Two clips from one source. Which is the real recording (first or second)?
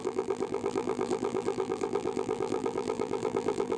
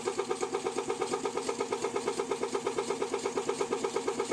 second